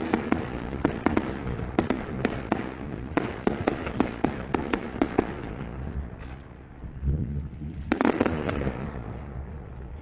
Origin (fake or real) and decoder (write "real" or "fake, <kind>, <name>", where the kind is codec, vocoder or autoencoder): fake, vocoder, Vocos